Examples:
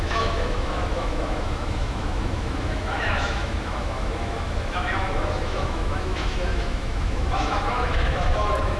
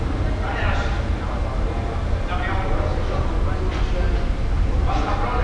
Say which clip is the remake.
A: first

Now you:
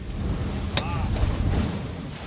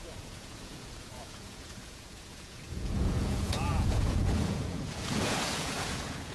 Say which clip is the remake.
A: second